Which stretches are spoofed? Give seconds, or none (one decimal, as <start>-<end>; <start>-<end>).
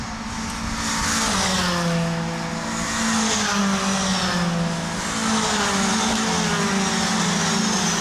none